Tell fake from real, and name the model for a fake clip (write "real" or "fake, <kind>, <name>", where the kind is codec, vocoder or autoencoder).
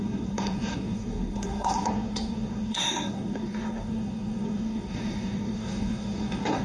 fake, codec, SNAC